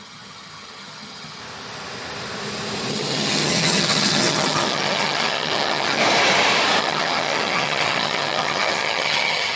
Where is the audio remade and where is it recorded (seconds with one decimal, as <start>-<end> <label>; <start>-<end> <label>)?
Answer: 0.0-1.4 remade; 1.4-2.9 recorded; 2.9-6.0 remade; 6.0-6.8 recorded; 6.8-9.6 remade

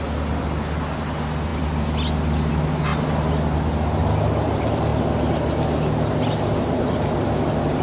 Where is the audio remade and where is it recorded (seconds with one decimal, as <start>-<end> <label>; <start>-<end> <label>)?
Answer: 0.0-7.8 recorded